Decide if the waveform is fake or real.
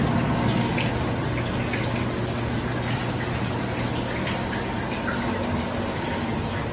real